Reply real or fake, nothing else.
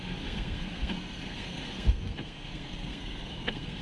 fake